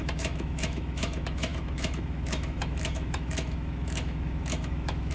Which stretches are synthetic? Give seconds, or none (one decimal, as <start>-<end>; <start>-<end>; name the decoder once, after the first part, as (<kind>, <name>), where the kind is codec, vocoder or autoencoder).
0.0-5.1 (autoencoder, DAC-VAE)